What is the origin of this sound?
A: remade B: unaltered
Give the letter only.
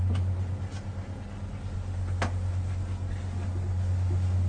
B